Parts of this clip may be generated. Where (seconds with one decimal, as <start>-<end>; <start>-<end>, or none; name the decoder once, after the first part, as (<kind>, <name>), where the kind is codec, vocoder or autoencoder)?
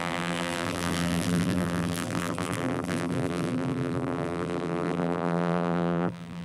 0.0-6.4 (vocoder, BigVGAN v2)